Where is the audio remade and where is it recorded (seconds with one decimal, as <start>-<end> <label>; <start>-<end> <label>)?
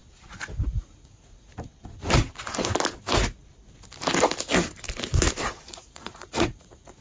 0.0-0.6 recorded; 0.6-1.5 remade; 1.5-5.7 recorded; 5.7-7.0 remade